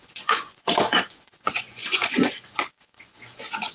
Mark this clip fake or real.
fake